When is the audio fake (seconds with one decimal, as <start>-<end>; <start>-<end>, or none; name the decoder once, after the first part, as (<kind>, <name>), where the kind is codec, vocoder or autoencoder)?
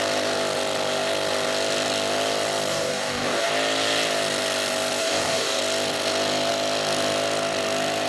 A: 2.7-3.5 (codec, DAC); 5.0-5.6